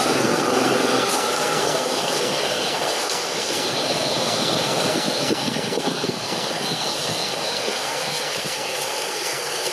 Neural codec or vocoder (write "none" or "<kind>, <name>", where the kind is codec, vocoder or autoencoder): codec, SNAC